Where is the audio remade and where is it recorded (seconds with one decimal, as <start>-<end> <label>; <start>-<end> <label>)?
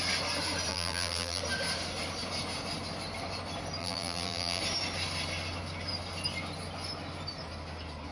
0.0-0.7 recorded; 0.7-1.4 remade; 1.4-3.8 recorded; 3.8-4.6 remade; 4.6-8.1 recorded